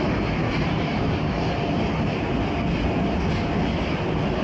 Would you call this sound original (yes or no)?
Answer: yes